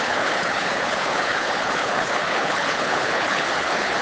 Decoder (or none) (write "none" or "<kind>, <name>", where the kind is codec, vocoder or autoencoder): codec, HILCodec